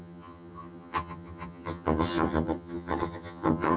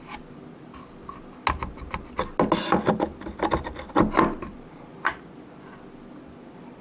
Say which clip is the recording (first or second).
second